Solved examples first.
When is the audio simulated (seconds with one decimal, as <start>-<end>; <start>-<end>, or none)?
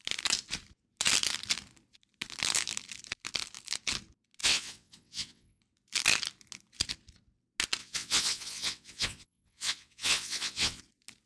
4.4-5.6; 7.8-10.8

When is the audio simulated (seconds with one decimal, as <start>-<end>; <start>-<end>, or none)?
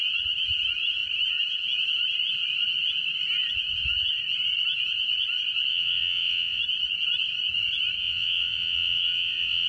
5.7-6.6; 8.0-9.7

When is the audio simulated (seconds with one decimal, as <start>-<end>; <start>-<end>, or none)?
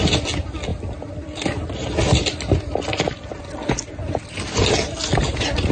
none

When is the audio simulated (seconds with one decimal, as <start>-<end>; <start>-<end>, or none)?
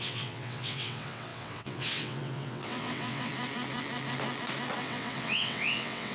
0.0-3.3; 4.8-6.1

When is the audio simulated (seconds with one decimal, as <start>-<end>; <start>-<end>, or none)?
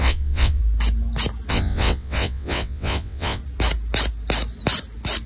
0.0-0.6; 1.5-3.4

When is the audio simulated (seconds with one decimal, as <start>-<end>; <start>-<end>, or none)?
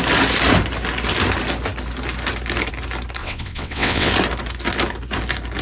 3.2-4.1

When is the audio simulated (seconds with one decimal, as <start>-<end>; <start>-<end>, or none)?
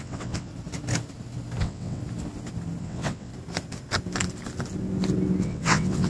0.0-0.5; 1.6-2.0; 2.8-3.3; 5.4-6.1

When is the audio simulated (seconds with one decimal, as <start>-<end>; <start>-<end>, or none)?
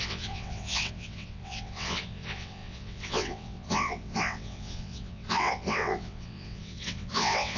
0.0-7.6